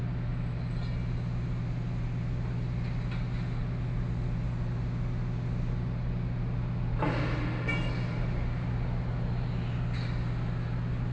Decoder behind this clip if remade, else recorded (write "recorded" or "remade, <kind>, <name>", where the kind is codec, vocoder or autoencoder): recorded